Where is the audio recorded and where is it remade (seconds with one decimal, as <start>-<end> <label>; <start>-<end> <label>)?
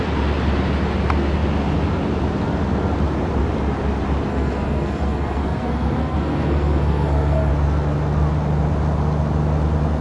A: 0.0-4.3 recorded; 4.3-7.5 remade; 7.5-10.0 recorded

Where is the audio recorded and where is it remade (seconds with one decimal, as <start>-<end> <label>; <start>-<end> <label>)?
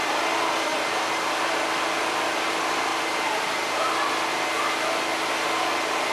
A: 0.0-0.7 recorded; 0.7-1.4 remade; 1.4-2.9 recorded; 2.9-3.9 remade; 3.9-6.1 recorded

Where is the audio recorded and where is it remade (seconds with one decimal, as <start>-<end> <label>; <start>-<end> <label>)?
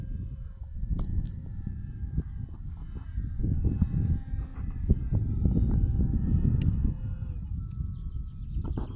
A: 0.0-4.5 recorded; 4.5-5.2 remade; 5.2-9.0 recorded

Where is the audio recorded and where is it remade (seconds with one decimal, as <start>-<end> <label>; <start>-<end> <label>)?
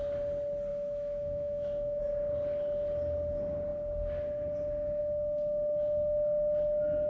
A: 0.0-0.7 recorded; 0.7-2.0 remade; 2.0-7.1 recorded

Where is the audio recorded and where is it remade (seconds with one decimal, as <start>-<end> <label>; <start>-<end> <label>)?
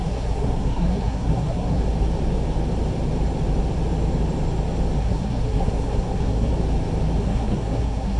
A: 0.0-1.8 remade; 1.8-5.0 recorded; 5.0-6.5 remade; 6.5-7.2 recorded; 7.2-8.2 remade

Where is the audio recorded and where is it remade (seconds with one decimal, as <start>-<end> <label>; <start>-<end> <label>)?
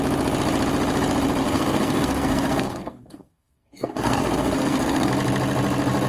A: 0.0-1.4 recorded; 1.4-5.1 remade; 5.1-6.1 recorded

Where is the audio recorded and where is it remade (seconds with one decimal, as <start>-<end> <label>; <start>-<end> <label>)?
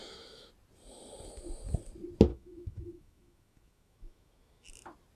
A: 0.0-0.5 remade; 0.5-2.3 recorded; 2.3-4.7 remade; 4.7-5.2 recorded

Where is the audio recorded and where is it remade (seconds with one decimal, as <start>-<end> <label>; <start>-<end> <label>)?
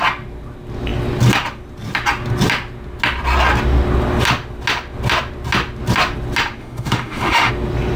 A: 0.0-6.6 recorded; 6.6-7.5 remade; 7.5-8.0 recorded